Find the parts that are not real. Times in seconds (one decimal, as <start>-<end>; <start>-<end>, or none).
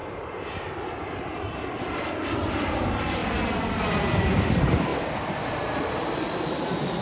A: 1.8-3.2; 3.9-7.0